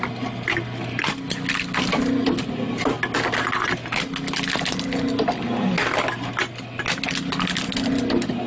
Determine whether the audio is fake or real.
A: real